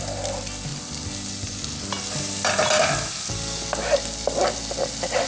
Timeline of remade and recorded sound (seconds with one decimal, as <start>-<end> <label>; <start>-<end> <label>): 0.0-5.3 recorded